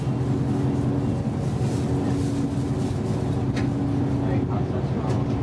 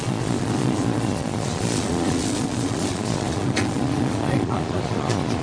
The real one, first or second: first